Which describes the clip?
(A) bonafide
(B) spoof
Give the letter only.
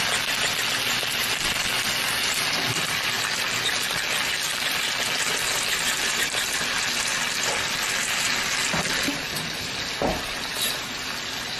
A